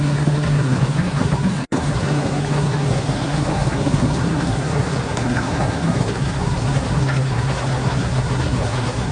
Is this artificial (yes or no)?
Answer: yes